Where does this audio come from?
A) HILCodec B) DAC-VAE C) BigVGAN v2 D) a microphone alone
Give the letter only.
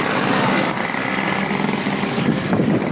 D